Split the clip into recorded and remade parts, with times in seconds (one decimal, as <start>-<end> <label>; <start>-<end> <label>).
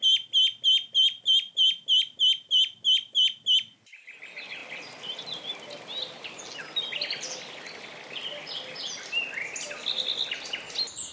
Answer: 0.0-11.1 recorded